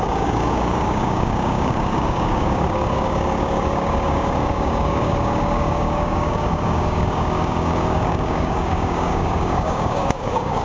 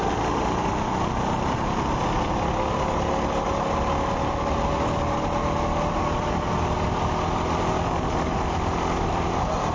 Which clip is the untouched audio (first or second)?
second